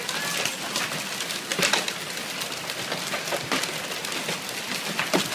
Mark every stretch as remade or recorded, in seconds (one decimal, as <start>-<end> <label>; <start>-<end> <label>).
0.0-5.3 recorded